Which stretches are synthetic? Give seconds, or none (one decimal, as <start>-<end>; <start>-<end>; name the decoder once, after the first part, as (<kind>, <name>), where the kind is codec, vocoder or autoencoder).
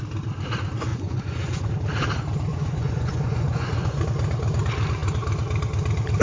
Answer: 0.9-1.7 (vocoder, Vocos); 2.5-4.0